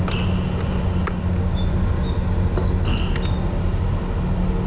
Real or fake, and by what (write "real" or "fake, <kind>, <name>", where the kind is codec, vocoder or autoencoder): real